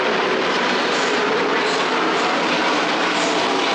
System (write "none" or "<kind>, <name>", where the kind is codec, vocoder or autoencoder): vocoder, BigVGAN v2